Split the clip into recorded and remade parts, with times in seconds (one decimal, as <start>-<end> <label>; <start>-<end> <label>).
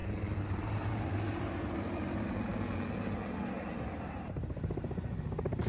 0.0-2.5 remade; 2.5-4.0 recorded; 4.0-5.7 remade